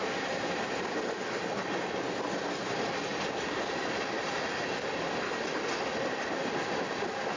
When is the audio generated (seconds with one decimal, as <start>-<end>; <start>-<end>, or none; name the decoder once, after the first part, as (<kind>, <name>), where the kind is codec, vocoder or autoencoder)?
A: none